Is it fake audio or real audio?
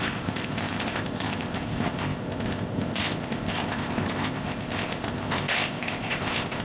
fake